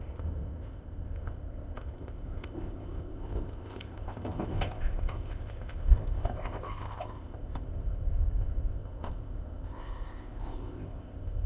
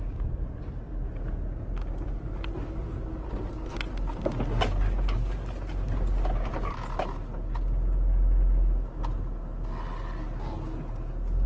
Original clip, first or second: second